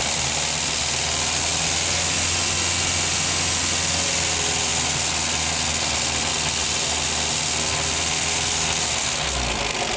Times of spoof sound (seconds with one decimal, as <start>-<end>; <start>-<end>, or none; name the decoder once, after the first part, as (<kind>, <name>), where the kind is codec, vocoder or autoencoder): none